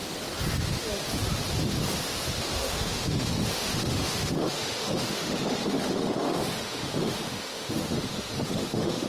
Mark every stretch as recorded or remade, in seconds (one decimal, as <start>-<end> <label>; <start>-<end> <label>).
0.0-2.4 recorded; 2.4-9.1 remade